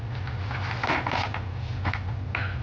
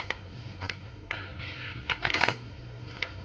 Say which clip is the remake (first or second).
second